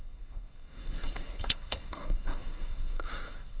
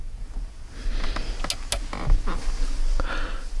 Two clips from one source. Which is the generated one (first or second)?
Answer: first